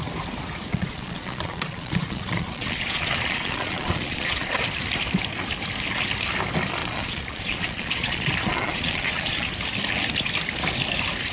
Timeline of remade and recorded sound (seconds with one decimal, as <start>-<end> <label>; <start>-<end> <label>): 0.0-0.7 recorded; 0.7-4.5 remade; 4.5-6.8 recorded; 6.8-9.5 remade; 9.5-11.3 recorded